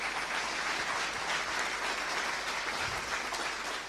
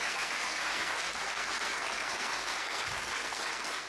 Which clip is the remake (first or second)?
second